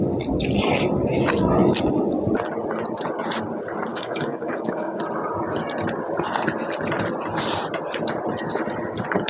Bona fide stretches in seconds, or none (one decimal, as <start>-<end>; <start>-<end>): 0.0-3.9; 5.0-9.3